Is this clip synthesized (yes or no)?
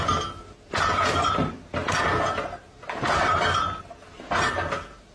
no